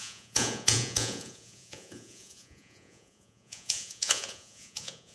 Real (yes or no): no